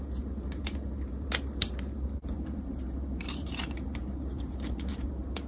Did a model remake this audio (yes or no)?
yes